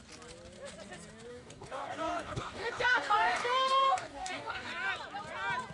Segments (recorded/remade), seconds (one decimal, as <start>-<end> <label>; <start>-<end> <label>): 0.0-1.3 recorded; 1.3-4.7 remade; 4.7-5.7 recorded